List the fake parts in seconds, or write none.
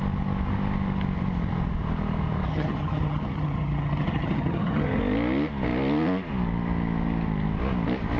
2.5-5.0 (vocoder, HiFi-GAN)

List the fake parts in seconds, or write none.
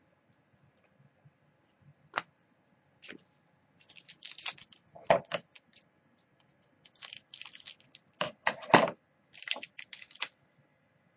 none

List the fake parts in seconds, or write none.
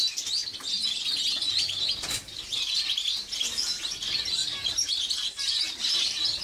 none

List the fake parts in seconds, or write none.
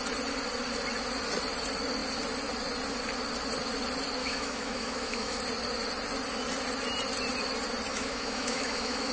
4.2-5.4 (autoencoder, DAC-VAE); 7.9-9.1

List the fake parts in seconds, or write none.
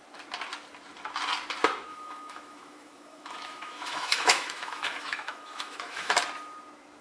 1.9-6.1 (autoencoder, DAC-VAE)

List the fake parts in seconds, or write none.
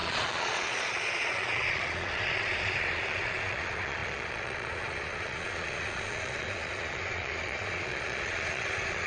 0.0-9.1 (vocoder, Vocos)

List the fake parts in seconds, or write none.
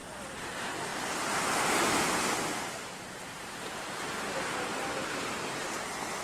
0.0-0.5 (vocoder, BigVGAN v2)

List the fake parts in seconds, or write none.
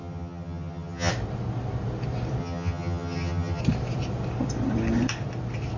0.0-1.1 (vocoder, HiFi-GAN); 2.4-3.6